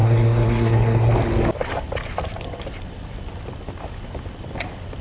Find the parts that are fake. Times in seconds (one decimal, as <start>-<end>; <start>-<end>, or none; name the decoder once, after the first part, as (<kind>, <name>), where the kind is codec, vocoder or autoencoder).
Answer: 0.0-1.1 (codec, SNAC)

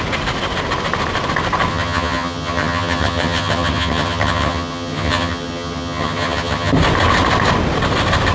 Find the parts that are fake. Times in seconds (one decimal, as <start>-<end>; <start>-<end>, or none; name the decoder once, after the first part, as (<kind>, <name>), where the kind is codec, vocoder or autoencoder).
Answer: 1.7-6.7 (vocoder, HiFi-GAN)